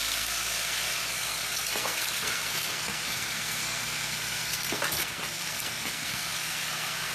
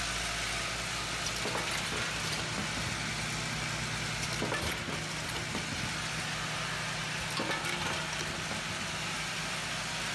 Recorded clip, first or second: second